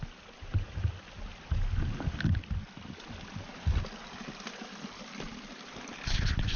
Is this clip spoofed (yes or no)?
no